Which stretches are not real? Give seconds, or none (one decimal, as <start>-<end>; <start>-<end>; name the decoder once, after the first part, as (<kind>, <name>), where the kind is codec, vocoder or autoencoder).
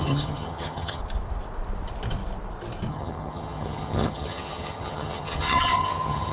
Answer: 0.0-1.0 (vocoder, HiFi-GAN); 2.9-6.3